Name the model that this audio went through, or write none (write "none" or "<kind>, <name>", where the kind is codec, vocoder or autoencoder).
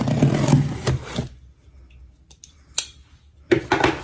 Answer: none